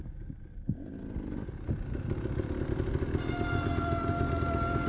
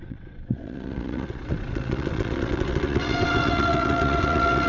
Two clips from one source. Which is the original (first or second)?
first